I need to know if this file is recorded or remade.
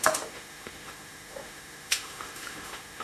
remade